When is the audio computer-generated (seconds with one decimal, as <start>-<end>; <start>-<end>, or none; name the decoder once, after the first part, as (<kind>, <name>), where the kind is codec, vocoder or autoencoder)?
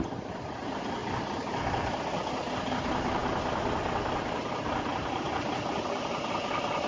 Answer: none